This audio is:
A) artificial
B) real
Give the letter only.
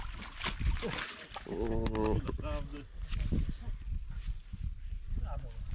B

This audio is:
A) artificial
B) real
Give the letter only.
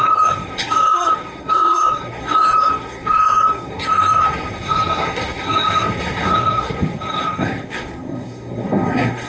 A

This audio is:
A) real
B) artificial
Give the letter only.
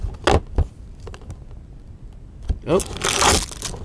A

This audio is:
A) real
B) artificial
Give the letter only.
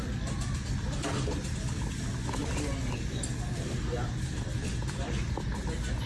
A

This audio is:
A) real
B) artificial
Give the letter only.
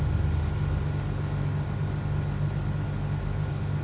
A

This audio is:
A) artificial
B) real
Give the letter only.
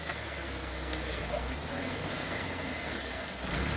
A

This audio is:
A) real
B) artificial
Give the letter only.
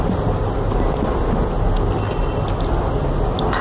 A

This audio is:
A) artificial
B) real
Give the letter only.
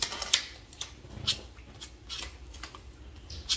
B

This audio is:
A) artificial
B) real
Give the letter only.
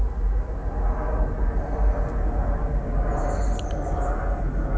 B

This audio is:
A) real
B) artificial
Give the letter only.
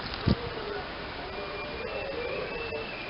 A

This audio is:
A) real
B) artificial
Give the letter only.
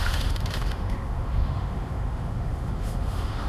B